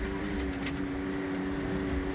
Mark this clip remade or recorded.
recorded